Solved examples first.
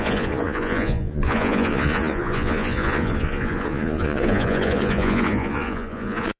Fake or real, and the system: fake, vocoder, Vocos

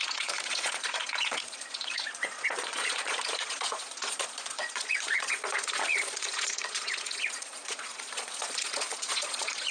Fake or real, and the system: fake, vocoder, Vocos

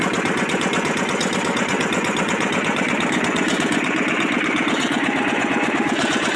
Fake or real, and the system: fake, vocoder, Vocos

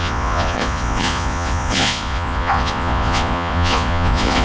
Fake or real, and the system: fake, vocoder, Vocos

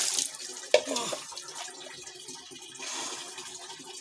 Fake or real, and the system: real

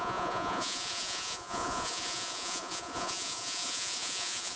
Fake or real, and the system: fake, vocoder, Vocos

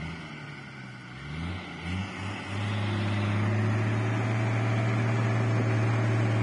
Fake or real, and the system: real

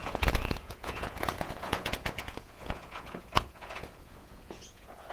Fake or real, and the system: fake, vocoder, Vocos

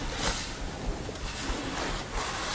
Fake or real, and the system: real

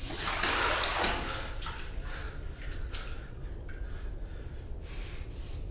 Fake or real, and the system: real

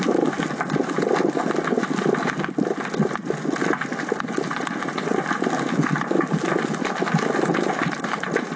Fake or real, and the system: real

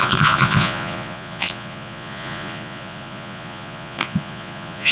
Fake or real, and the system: fake, vocoder, Vocos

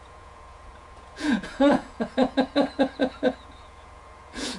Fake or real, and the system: fake, vocoder, Vocos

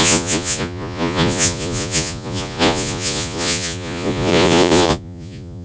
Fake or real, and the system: fake, vocoder, Vocos